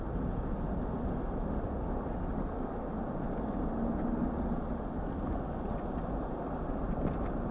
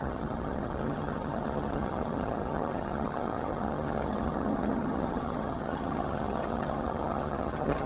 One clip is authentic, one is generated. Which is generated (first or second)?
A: second